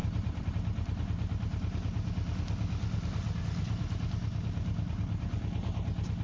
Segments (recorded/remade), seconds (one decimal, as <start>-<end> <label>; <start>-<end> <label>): 0.0-0.5 remade; 0.5-6.2 recorded